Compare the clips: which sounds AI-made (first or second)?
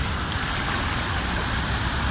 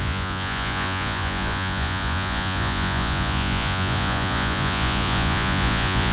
second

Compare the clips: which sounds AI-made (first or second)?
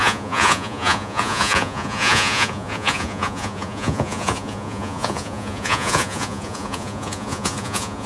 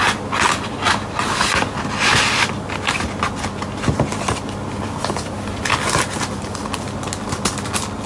first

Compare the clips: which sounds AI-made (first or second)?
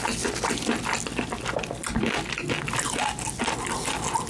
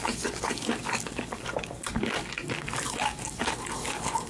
second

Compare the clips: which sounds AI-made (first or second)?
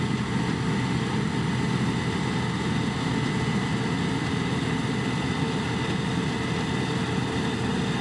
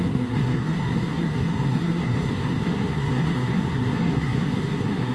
second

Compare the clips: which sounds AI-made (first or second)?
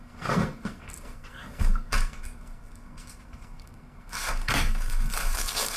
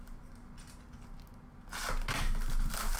first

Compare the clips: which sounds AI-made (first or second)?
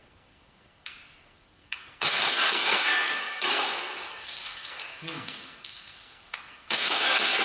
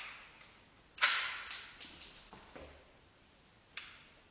first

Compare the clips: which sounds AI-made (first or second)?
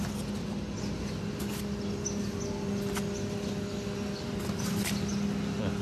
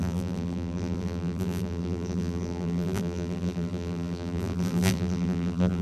second